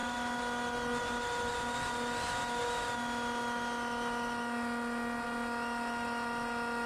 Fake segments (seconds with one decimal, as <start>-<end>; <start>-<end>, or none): none